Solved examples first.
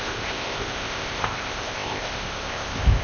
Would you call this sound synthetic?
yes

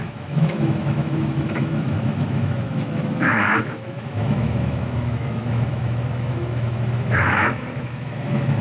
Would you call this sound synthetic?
yes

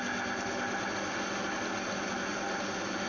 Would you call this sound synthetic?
no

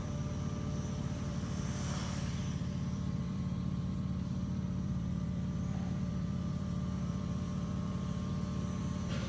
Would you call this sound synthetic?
yes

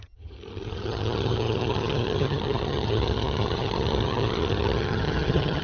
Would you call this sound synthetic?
yes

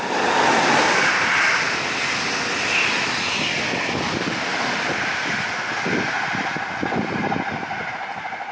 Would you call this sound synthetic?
no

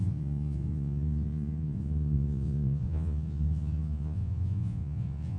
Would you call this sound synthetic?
yes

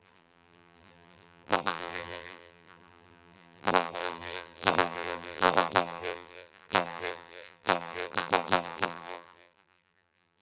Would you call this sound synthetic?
yes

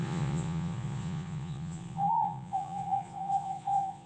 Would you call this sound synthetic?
yes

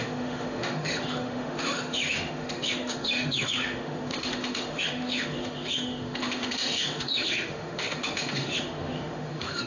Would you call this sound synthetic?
yes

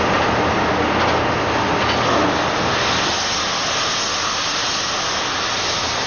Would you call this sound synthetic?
no